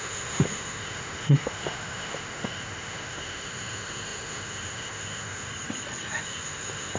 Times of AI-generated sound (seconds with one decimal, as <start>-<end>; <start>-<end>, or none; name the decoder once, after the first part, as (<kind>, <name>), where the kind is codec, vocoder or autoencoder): 0.0-5.5 (autoencoder, DAC-VAE); 6.2-7.0